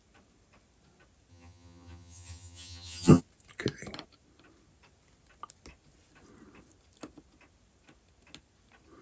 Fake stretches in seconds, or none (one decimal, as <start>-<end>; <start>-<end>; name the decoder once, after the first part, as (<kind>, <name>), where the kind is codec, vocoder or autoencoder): 1.3-3.2 (vocoder, HiFi-GAN)